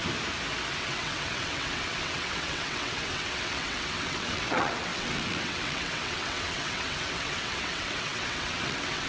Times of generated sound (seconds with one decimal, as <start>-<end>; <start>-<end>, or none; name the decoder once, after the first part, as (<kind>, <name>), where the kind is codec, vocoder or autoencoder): 0.8-9.1 (vocoder, WaveNeXt)